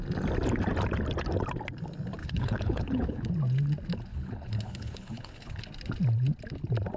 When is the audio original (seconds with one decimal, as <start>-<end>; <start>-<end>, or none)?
0.0-2.2; 3.3-4.1; 5.6-7.0